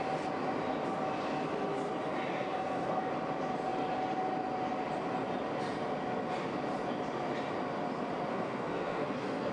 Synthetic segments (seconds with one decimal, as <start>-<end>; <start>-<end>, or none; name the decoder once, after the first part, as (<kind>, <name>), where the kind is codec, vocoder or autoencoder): 2.3-3.1 (codec, SNAC); 8.3-9.5